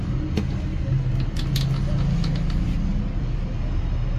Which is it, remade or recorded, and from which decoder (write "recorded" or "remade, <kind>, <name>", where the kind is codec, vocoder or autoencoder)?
recorded